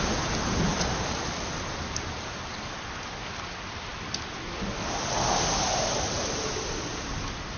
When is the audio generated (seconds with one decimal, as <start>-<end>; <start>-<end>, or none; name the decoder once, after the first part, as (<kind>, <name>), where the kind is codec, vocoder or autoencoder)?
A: none